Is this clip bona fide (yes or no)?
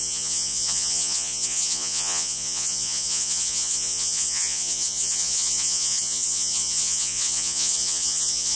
no